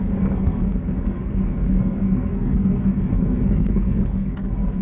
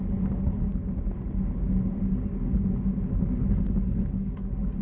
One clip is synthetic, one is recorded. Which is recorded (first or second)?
second